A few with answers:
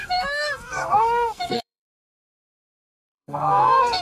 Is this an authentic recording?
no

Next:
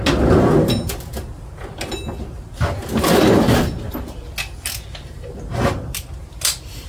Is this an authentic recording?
yes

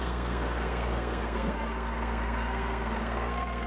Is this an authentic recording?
no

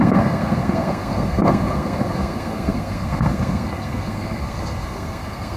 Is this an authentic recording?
no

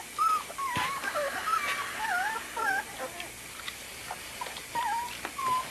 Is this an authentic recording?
yes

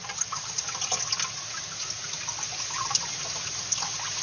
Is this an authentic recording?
yes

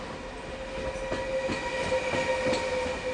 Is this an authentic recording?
yes